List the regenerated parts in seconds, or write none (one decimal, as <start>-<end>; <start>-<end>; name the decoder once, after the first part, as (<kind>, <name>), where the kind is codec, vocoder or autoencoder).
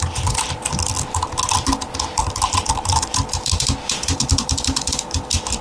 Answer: 0.0-0.9 (vocoder, BigVGAN v2); 4.3-5.6